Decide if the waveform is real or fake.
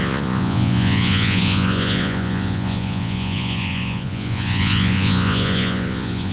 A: fake